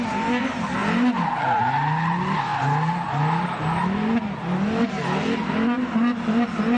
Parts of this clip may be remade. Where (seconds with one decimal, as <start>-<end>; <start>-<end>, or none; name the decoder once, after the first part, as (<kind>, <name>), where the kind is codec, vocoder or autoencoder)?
none